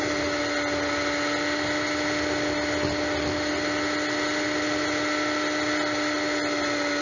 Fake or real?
real